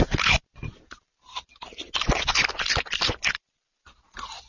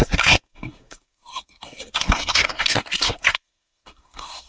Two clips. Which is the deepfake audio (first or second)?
second